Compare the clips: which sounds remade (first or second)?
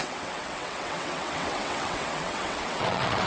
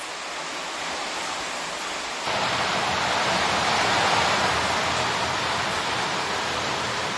first